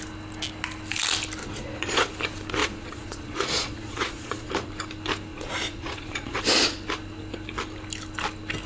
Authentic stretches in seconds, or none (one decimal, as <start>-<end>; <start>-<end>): 0.0-1.4; 2.1-2.6; 4.7-5.3; 6.4-8.7